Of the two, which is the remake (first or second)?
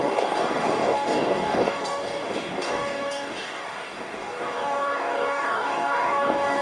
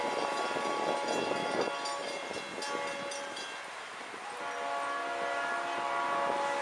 first